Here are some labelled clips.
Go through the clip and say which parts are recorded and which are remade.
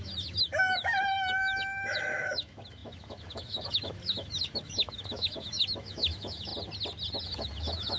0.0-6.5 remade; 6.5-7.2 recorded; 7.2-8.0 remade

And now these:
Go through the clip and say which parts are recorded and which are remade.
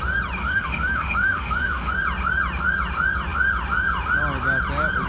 0.0-0.4 recorded; 0.4-1.9 remade; 1.9-5.1 recorded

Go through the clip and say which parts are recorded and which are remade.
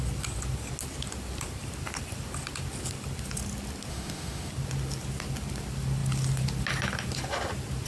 0.0-3.9 recorded; 3.9-4.5 remade; 4.5-7.9 recorded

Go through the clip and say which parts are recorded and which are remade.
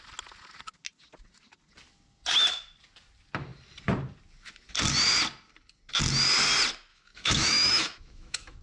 0.0-6.9 recorded; 6.9-8.6 remade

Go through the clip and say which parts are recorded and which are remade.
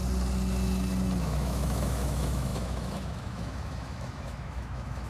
0.0-1.2 recorded; 1.2-5.1 remade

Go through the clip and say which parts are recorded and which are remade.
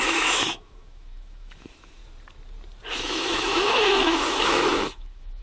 0.0-2.0 remade; 2.0-3.0 recorded; 3.0-5.4 remade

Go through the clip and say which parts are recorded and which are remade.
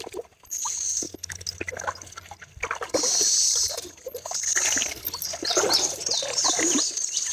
0.0-7.3 recorded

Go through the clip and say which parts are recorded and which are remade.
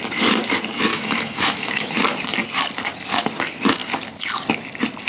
0.0-0.9 recorded; 0.9-1.9 remade; 1.9-5.1 recorded